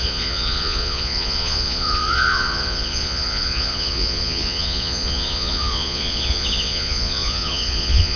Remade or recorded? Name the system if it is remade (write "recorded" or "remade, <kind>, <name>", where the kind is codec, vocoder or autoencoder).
remade, vocoder, Vocos